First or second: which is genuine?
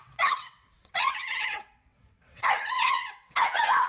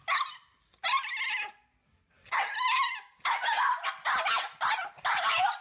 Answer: second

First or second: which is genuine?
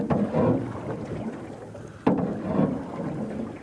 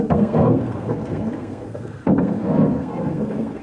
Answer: first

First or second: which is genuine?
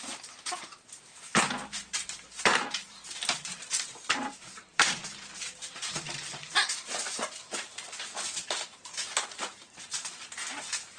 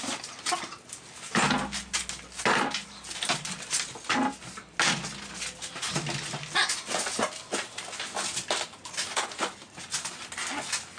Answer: second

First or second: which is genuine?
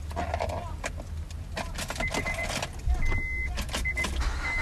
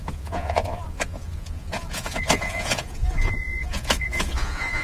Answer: first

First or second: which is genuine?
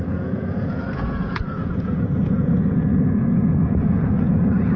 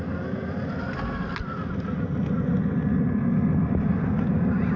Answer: second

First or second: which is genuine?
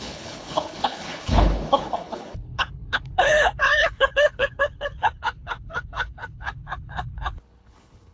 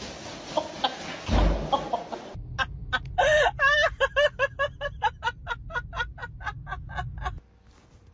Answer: second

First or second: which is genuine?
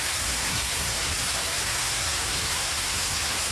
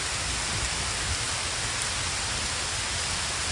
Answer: second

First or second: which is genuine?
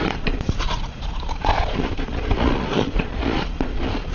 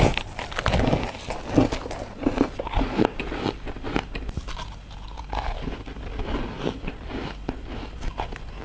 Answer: second